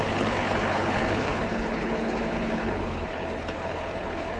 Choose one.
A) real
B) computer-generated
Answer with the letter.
B